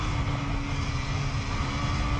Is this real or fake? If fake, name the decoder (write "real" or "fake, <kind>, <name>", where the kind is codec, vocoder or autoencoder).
real